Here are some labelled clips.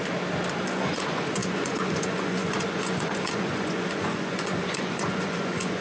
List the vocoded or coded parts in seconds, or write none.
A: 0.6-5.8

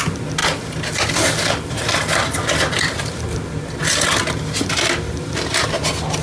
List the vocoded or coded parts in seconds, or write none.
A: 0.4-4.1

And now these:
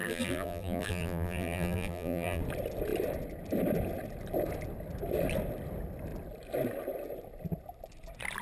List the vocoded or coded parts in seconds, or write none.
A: 0.0-2.4

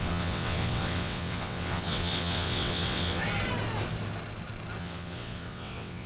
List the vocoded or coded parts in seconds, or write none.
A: 0.0-3.2; 4.8-6.1

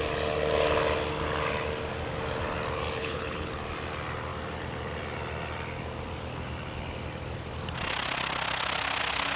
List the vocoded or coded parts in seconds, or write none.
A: 3.0-3.5

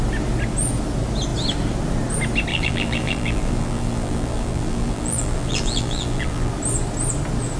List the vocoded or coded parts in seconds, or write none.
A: 2.5-6.5

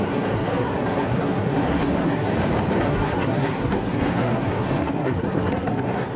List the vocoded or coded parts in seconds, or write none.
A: 0.0-2.3; 2.8-6.2